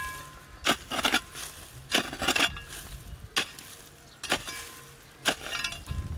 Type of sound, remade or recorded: recorded